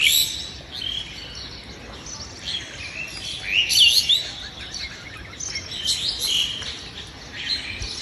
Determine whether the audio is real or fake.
real